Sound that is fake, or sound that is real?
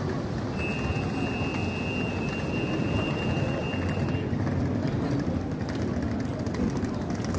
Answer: real